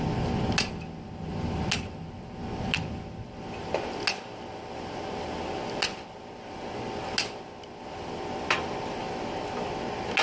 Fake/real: real